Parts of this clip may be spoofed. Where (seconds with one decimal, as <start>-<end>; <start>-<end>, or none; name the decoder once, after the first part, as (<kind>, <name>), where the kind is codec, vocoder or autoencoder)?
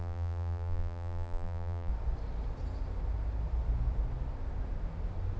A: 0.0-1.9 (vocoder, BigVGAN v2)